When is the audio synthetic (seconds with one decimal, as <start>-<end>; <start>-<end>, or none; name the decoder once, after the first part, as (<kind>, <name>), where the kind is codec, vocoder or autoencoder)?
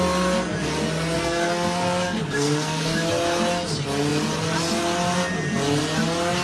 1.2-3.1 (codec, SNAC)